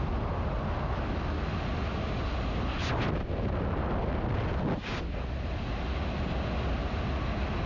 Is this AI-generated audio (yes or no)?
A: no